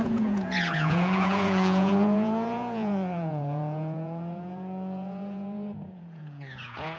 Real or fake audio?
fake